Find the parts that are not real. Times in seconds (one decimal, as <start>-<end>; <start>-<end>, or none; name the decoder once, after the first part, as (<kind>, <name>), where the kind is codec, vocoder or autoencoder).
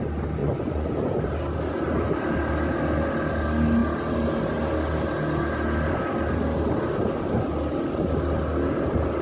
0.4-1.2 (vocoder, Vocos)